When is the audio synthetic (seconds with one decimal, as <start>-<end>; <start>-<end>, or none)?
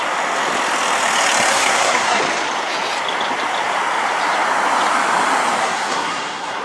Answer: 1.5-2.2; 5.6-6.6